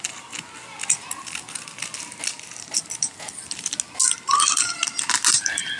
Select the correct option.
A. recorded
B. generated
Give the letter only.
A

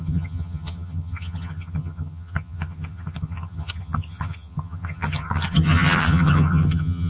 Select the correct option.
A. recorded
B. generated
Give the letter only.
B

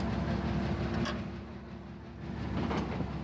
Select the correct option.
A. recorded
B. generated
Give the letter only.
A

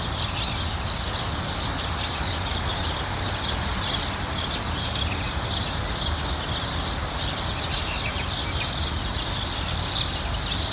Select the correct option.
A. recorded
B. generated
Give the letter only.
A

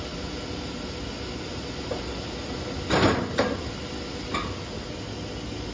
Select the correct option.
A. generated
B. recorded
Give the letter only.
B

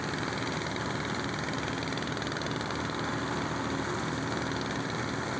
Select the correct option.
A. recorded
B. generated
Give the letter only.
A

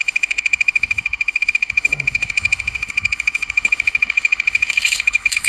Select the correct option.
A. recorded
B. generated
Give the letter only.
B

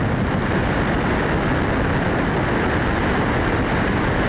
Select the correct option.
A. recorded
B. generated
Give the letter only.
A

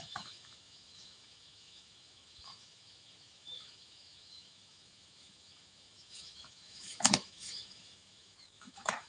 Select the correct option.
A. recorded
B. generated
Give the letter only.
B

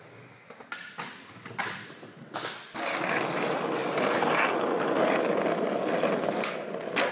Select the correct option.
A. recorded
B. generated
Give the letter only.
A